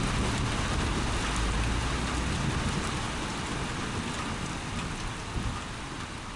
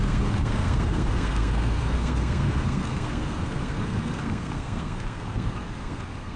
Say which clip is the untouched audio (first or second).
first